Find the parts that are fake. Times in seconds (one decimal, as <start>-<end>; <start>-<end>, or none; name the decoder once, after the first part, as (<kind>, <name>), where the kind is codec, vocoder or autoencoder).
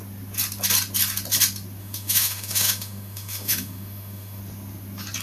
1.8-4.4 (autoencoder, DAC-VAE)